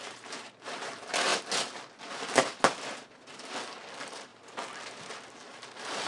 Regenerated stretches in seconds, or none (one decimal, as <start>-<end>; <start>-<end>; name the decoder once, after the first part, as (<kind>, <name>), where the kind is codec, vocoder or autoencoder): 0.0-1.3 (vocoder, BigVGAN v2); 3.9-4.3; 5.1-6.1